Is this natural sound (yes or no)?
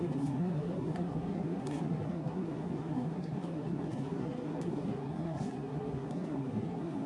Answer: no